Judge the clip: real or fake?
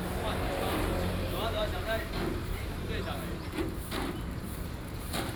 fake